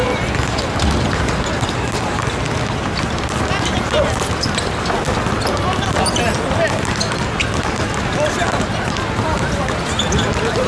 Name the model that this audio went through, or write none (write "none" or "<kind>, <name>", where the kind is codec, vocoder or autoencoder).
none